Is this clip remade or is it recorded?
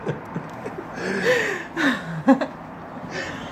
recorded